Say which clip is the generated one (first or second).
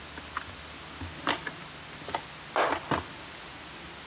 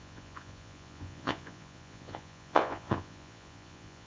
second